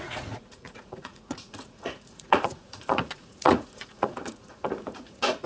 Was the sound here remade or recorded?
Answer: remade